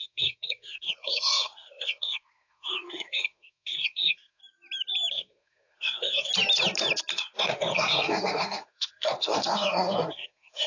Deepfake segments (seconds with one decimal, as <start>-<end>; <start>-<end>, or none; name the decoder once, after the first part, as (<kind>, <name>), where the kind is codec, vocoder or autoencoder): 0.0-4.4 (codec, SNAC); 5.1-6.3; 7.1-10.7

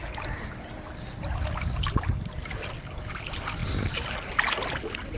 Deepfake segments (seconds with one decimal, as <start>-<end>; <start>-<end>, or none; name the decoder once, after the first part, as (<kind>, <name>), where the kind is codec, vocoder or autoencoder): none

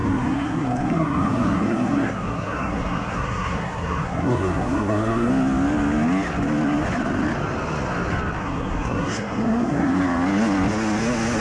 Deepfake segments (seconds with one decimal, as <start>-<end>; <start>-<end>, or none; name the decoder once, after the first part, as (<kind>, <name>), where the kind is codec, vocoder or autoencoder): 0.0-5.3 (codec, SNAC); 8.4-10.0

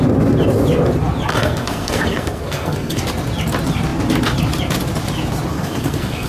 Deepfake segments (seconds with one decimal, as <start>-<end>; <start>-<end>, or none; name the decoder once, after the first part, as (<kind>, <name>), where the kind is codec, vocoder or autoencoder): 1.3-3.0 (codec, SNAC); 5.5-6.3

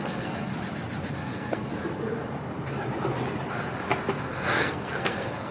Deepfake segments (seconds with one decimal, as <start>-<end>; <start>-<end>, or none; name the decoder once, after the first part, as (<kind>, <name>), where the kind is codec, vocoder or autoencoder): 0.0-0.5 (codec, SNAC); 1.1-1.7; 4.2-5.5

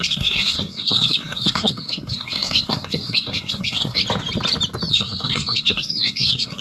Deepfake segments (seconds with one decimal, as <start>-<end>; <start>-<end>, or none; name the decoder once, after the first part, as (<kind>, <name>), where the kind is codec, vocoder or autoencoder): 0.0-4.0 (codec, SNAC); 4.9-6.6